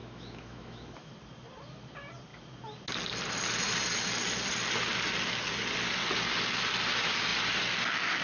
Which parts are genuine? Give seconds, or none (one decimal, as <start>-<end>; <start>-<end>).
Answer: 1.1-8.2